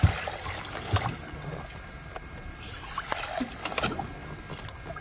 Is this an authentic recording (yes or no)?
yes